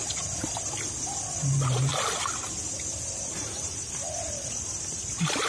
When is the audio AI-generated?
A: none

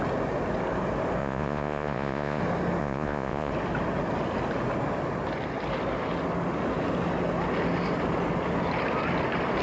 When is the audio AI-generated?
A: 1.2-2.4; 2.8-3.5